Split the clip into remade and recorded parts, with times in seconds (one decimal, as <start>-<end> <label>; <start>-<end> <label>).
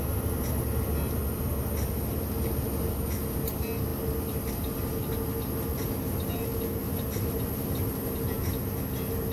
0.0-9.3 recorded